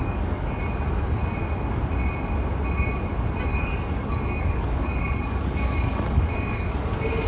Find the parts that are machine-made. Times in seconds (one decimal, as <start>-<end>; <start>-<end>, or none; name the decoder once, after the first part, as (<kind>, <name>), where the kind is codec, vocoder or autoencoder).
0.0-0.6 (codec, DAC); 3.5-7.3